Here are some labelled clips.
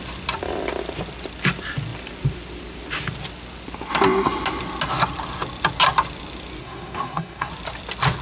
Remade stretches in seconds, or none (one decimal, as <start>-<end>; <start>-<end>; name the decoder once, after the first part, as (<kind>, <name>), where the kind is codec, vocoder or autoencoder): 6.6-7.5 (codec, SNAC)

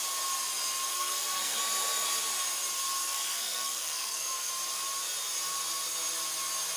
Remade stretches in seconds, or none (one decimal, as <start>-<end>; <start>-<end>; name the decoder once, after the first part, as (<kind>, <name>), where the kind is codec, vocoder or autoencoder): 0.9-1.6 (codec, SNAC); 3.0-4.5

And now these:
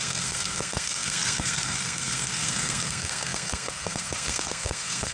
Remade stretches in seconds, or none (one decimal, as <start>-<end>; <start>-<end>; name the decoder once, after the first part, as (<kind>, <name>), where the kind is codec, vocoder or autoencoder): 0.0-5.1 (codec, SNAC)